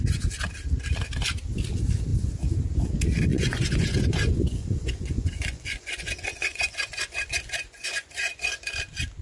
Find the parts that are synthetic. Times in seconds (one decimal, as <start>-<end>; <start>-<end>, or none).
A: 3.3-8.5